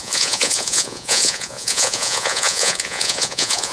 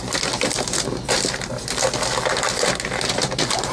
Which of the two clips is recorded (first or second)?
second